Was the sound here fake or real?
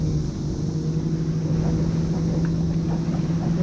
real